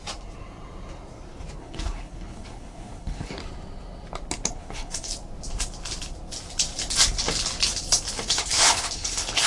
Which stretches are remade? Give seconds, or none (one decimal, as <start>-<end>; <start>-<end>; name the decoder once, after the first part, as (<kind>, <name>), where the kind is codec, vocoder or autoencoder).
1.6-3.4 (codec, HILCodec); 4.5-5.1; 8.2-9.5